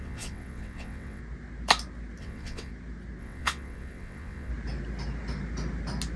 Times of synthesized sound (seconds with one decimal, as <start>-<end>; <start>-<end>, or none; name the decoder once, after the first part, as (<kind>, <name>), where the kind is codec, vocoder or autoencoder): 0.0-1.2 (vocoder, WaveNeXt); 2.2-2.7; 3.2-4.5